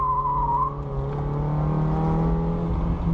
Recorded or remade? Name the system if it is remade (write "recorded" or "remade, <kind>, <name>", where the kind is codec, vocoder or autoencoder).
recorded